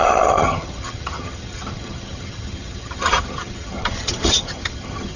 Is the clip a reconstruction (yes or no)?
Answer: yes